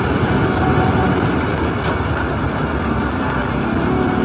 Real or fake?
real